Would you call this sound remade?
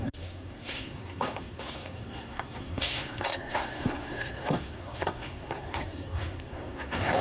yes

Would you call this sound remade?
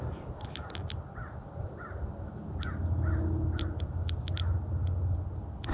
no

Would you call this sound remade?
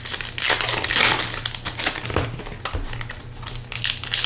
no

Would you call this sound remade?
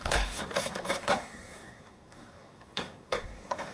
yes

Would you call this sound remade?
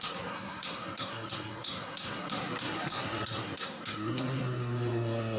yes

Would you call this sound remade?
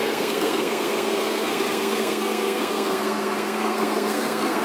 yes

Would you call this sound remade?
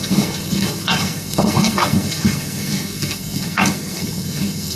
yes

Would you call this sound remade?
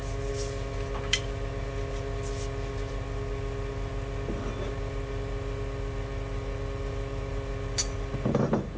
no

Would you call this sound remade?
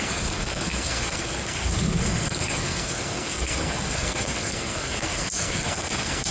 yes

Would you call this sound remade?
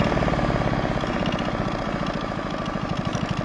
no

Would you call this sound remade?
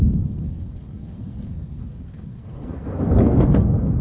yes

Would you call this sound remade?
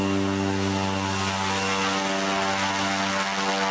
no